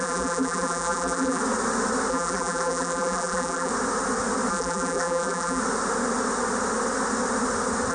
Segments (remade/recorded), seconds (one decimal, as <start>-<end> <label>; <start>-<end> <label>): 0.0-1.4 remade; 1.4-2.1 recorded; 2.1-3.7 remade; 3.7-4.5 recorded; 4.5-5.6 remade; 5.6-7.9 recorded